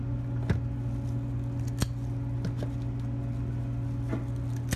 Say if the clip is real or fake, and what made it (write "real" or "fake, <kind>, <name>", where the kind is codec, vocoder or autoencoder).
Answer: real